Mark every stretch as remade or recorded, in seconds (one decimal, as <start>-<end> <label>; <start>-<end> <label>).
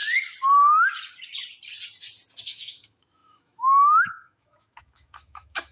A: 0.0-2.4 recorded; 2.4-5.7 remade